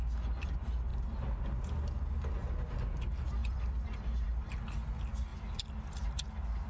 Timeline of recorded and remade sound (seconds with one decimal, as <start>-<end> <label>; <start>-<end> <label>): 0.0-3.4 recorded; 3.4-4.6 remade; 4.6-6.7 recorded